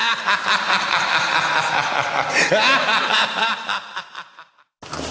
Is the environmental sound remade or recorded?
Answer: recorded